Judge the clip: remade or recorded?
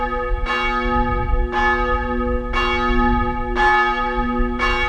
recorded